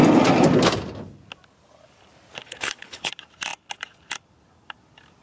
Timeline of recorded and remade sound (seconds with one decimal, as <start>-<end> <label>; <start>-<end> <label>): 0.0-2.4 recorded; 2.4-3.1 remade; 3.1-5.2 recorded

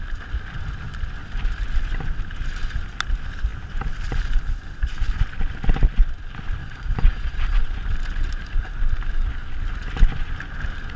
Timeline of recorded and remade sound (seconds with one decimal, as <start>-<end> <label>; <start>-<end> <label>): 0.0-6.6 recorded; 6.6-7.6 remade; 7.6-11.0 recorded